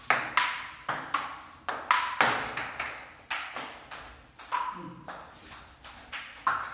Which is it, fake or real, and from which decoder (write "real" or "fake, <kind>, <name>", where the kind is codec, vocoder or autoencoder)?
real